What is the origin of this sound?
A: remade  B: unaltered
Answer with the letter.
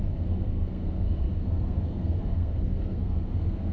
A